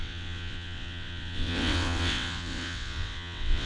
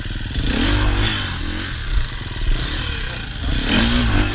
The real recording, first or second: second